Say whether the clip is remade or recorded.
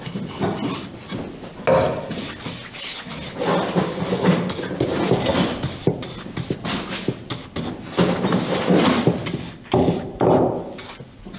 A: recorded